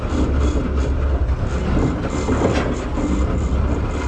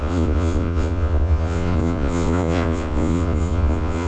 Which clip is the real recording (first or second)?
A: first